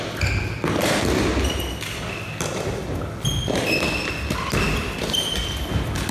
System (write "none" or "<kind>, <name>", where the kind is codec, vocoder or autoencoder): none